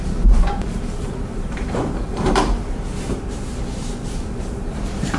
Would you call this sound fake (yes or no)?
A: yes